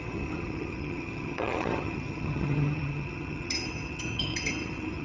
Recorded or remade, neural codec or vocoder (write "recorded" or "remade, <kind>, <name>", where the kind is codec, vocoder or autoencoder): remade, vocoder, HiFi-GAN